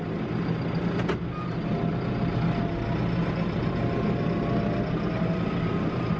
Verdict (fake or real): real